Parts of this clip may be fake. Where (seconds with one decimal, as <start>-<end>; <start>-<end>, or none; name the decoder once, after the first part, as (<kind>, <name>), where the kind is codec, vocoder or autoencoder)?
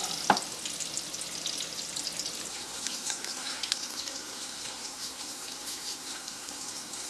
2.5-7.1 (codec, SNAC)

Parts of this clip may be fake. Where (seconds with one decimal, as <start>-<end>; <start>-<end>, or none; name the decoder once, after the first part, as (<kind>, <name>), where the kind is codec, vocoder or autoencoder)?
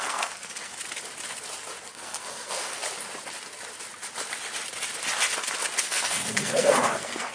0.0-0.7 (codec, SNAC); 1.9-2.8; 5.8-7.3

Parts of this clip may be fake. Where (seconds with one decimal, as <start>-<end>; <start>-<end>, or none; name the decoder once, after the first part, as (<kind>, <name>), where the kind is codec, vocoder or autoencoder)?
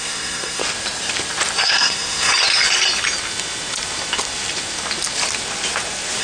0.0-0.6 (codec, SNAC); 1.6-2.3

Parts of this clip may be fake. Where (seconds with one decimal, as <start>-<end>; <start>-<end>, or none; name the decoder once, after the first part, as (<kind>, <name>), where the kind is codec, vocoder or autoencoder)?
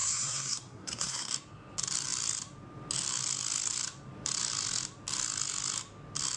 0.0-1.3 (codec, SNAC)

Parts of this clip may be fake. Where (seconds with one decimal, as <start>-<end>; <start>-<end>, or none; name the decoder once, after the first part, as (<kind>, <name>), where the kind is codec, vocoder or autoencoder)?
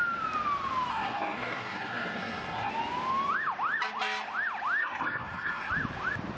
0.9-2.7 (codec, SNAC); 4.8-5.7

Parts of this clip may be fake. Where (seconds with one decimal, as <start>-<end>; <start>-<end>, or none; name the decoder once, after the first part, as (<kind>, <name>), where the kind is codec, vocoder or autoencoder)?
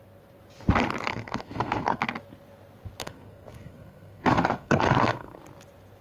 1.1-2.0 (codec, SNAC); 3.0-5.4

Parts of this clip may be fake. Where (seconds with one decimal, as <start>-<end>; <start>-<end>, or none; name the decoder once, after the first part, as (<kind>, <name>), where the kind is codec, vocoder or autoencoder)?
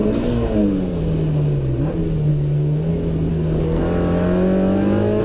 0.0-1.0 (codec, SNAC); 2.3-2.9; 3.3-3.8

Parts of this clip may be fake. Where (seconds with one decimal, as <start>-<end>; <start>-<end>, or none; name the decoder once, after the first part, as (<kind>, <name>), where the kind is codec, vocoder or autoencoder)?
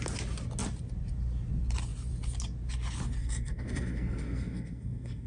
3.2-5.3 (codec, SNAC)